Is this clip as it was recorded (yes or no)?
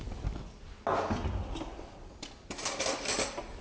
yes